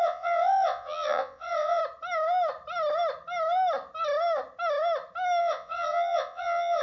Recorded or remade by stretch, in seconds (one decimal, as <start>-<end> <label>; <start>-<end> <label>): 0.0-1.8 remade; 1.8-5.4 recorded; 5.4-6.8 remade